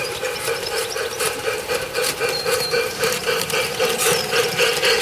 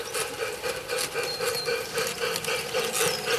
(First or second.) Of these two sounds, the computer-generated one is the first